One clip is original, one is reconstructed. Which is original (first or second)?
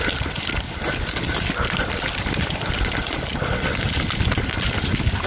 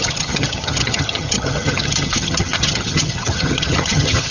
first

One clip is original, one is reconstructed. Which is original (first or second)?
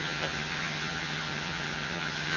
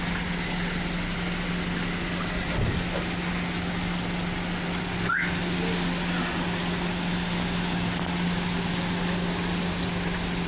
second